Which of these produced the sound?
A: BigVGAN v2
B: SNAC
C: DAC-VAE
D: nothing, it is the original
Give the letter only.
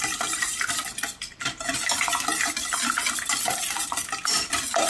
D